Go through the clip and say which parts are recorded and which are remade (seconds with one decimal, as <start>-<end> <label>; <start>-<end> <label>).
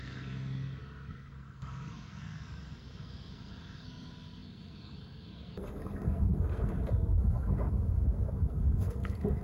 0.0-9.4 remade